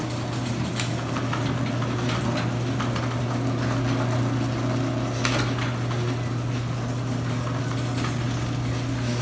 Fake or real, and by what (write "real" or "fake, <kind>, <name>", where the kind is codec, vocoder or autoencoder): real